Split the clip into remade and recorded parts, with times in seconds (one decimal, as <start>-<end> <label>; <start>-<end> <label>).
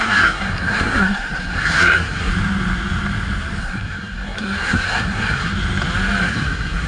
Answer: 0.0-2.3 remade; 2.3-3.6 recorded; 3.6-5.5 remade; 5.5-6.2 recorded; 6.2-6.9 remade